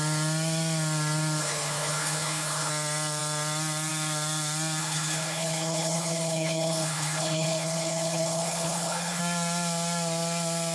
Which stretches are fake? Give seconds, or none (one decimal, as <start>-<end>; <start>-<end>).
1.4-2.7; 4.8-9.2